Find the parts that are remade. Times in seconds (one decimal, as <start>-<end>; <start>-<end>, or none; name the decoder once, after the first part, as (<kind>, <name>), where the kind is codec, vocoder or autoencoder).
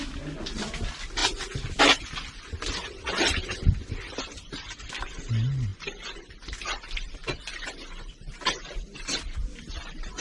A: none